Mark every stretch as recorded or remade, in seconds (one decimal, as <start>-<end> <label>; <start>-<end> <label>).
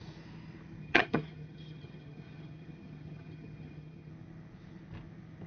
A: 0.0-0.8 recorded; 0.8-4.1 remade; 4.1-5.5 recorded